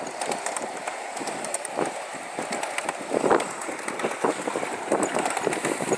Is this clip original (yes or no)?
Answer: yes